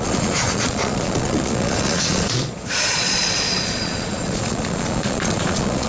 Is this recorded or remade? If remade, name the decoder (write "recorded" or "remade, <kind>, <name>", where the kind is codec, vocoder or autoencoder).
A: remade, vocoder, Vocos